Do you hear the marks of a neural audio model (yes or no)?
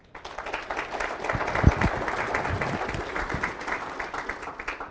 no